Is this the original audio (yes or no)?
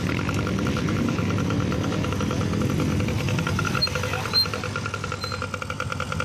yes